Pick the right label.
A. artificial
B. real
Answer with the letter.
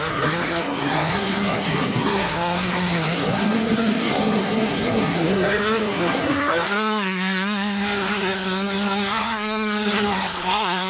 A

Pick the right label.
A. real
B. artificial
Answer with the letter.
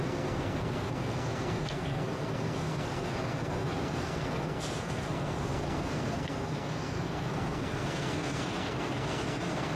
B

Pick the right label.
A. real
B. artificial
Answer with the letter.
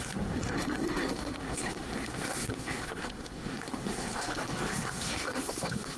B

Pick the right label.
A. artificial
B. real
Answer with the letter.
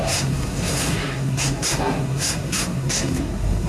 A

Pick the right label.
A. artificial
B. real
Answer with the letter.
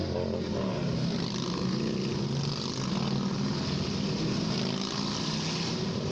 B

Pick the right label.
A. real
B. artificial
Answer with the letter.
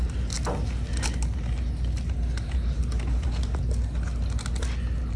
A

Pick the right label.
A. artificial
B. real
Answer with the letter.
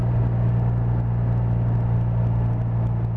B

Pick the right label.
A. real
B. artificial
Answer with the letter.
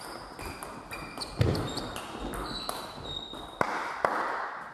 A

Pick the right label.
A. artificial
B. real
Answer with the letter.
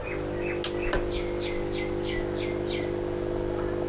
B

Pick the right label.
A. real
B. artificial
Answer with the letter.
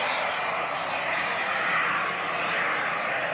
A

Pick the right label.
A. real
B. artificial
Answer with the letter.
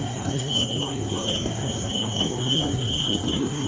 B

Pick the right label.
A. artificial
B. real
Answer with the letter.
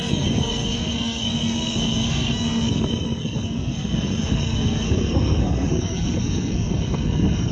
A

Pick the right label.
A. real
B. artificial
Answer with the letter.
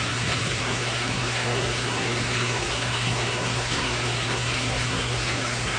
B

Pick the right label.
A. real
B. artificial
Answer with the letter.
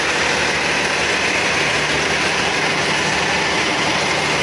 A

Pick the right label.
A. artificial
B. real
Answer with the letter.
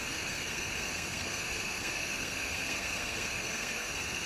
A